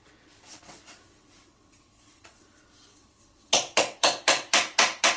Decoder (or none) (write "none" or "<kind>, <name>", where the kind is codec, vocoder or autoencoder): vocoder, WaveNeXt